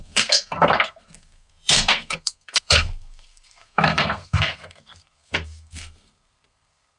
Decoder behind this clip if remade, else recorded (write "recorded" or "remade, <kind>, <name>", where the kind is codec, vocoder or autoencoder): remade, codec, SNAC